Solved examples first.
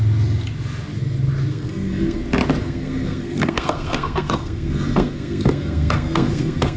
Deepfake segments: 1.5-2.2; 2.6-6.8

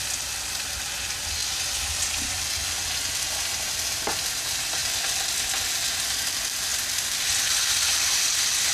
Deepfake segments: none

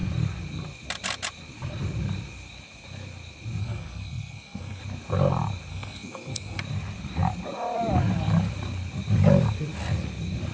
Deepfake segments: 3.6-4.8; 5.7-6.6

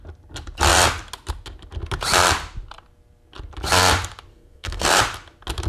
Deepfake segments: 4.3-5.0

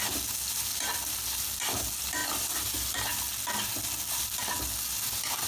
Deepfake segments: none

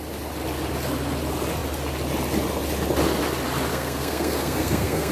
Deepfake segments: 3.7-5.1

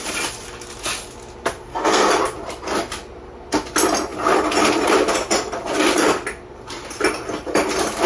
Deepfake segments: 1.7-2.2